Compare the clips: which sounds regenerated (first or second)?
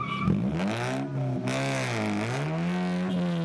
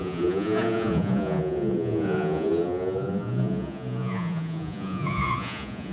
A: second